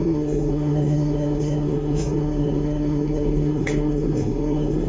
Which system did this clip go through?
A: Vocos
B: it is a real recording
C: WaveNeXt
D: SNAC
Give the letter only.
D